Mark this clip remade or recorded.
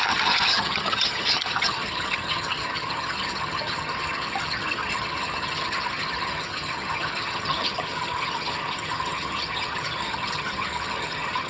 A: remade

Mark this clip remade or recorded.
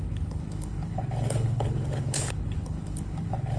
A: remade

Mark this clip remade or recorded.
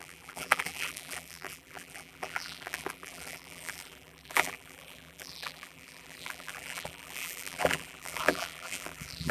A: remade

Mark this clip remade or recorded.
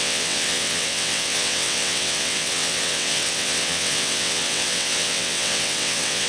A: remade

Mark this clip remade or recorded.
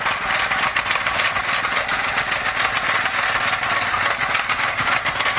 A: recorded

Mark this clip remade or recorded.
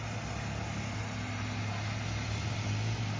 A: recorded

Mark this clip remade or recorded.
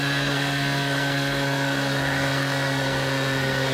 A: remade